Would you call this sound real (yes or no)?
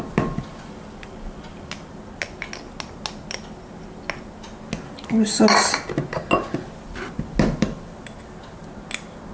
yes